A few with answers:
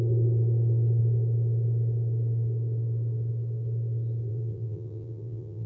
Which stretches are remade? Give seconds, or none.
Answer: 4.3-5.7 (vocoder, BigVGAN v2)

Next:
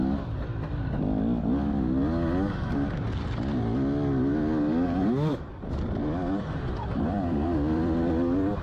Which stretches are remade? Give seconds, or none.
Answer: 5.3-8.1 (vocoder, BigVGAN v2)

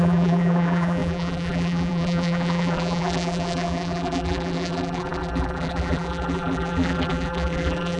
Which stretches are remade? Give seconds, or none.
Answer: 0.0-8.0 (vocoder, BigVGAN v2)

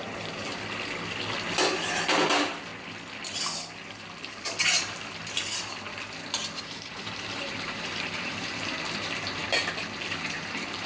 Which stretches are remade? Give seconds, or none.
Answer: 0.0-0.5 (vocoder, BigVGAN v2); 2.3-2.7; 6.6-9.4; 10.1-10.9

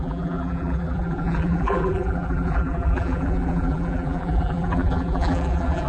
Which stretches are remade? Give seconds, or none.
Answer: 0.0-5.9 (vocoder, BigVGAN v2)

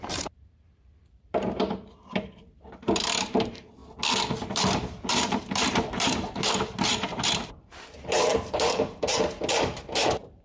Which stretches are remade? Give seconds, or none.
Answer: 0.0-3.8 (vocoder, BigVGAN v2); 4.5-10.4

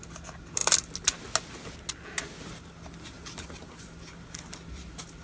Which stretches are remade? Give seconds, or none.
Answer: none

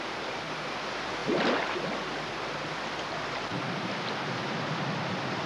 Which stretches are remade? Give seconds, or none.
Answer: 0.0-5.5 (vocoder, BigVGAN v2)